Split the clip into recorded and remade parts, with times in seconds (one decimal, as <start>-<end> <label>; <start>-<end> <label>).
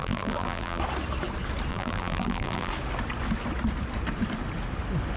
0.0-0.8 remade; 0.8-1.7 recorded; 1.7-2.7 remade; 2.7-5.2 recorded